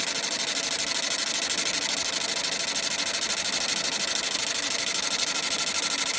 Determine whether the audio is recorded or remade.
recorded